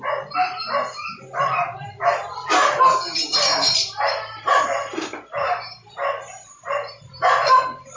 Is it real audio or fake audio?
fake